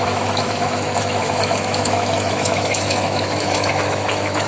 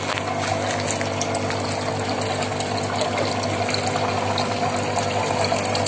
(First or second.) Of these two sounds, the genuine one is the second